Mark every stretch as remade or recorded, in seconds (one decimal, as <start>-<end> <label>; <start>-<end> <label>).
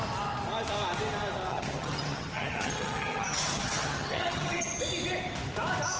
0.0-1.5 recorded; 1.5-4.8 remade; 4.8-6.0 recorded